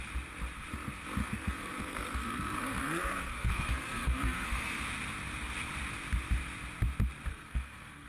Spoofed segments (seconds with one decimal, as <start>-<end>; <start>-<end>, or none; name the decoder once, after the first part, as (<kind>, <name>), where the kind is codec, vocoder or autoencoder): 1.2-4.8 (codec, SNAC); 7.3-8.1